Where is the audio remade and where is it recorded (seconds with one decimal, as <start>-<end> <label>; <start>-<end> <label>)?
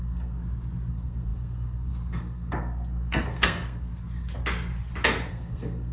0.0-0.4 remade; 0.4-0.9 recorded; 0.9-3.9 remade; 3.9-5.3 recorded; 5.3-5.9 remade